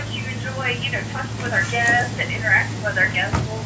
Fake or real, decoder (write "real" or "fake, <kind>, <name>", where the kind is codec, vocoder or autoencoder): real